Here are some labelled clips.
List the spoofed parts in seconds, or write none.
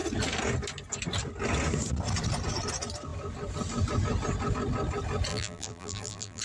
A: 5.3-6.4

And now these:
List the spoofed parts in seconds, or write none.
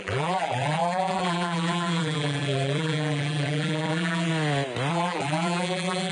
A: 0.0-4.3; 4.9-6.1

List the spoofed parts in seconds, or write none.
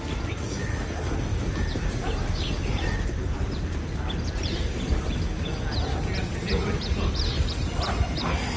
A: 1.3-5.0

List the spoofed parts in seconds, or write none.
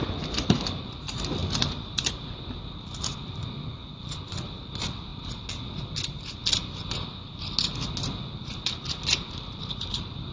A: 0.0-5.1; 9.8-10.3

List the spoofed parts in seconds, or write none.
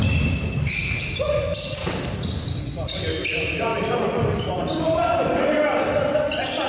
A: 0.8-2.0; 3.7-6.2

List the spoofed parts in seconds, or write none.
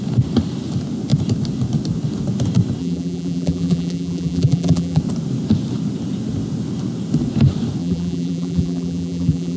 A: 2.8-5.0; 7.8-9.6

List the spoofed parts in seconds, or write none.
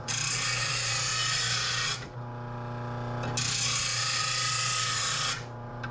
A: 0.0-1.1; 4.2-5.9